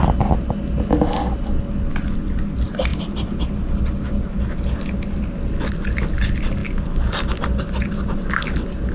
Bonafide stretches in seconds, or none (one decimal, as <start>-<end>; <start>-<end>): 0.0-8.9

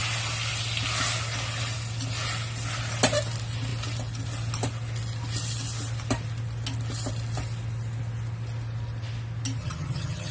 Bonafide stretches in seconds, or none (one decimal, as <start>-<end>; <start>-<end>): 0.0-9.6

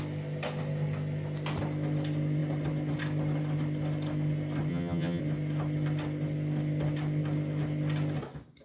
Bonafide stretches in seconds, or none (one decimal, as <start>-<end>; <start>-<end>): 0.0-4.7; 5.2-8.6